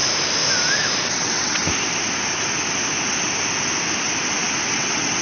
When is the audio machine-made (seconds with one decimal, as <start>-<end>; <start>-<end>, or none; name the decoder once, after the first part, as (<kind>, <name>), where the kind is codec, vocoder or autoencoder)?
1.2-1.6 (vocoder, WaveNeXt); 4.7-5.2